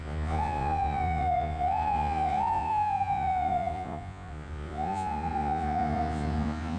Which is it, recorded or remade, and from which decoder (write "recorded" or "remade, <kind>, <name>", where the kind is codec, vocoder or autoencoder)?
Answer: remade, vocoder, Vocos